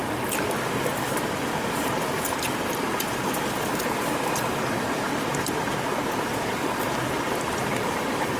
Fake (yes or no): no